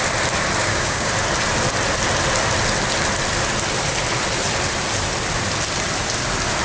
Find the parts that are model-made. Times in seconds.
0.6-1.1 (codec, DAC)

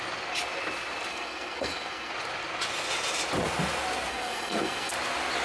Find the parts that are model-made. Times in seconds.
1.1-2.1 (codec, SNAC); 4.1-4.9

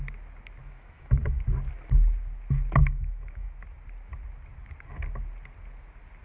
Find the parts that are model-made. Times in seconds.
0.6-1.4 (autoencoder, DAC-VAE); 2.8-3.6